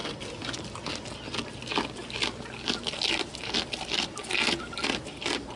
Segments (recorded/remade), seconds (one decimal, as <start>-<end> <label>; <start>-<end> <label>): 0.0-5.6 recorded